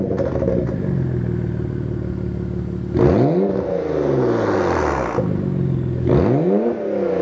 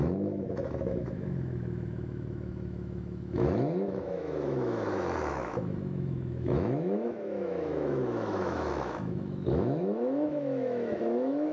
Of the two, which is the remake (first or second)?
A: second